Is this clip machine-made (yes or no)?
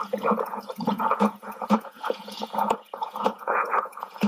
yes